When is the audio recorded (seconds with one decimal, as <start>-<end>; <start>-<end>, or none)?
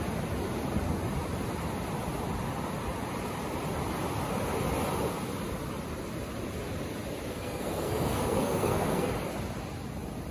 0.0-7.3; 9.1-10.3